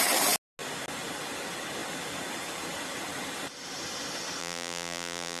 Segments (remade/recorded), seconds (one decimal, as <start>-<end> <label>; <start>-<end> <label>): 0.0-4.4 recorded; 4.4-5.4 remade

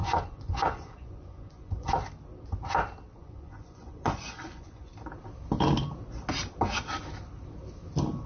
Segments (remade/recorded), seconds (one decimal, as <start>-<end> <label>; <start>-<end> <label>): 0.0-1.9 remade; 1.9-3.2 recorded; 3.2-4.9 remade; 4.9-8.3 recorded

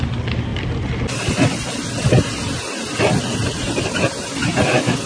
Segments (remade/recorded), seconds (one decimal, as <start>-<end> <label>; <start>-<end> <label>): 0.0-5.1 recorded

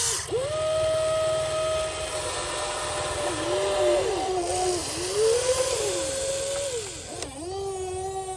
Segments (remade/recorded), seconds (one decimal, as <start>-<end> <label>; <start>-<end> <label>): 0.0-4.8 recorded; 4.8-6.3 remade; 6.3-8.4 recorded

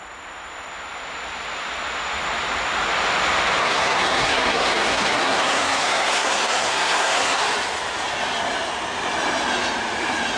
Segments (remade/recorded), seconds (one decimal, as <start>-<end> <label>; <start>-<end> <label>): 0.0-3.6 recorded; 3.6-7.4 remade; 7.4-10.4 recorded

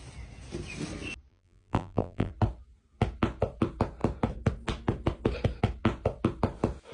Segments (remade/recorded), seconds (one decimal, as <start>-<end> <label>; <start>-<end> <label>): 0.0-1.3 recorded; 1.3-2.3 remade; 2.3-6.9 recorded